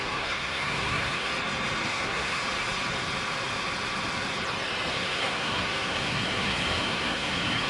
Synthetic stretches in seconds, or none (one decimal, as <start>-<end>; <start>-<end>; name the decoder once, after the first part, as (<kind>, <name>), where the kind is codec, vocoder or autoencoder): 0.0-1.3 (codec, SNAC); 1.9-2.4; 4.9-7.7